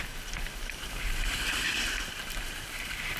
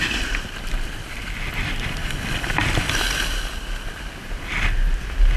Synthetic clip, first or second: first